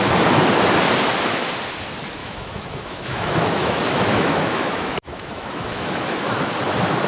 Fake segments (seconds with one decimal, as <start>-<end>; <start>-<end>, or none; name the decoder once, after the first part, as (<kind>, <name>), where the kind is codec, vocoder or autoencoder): 2.2-6.5 (autoencoder, DAC-VAE)